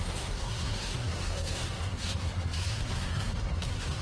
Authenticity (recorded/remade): remade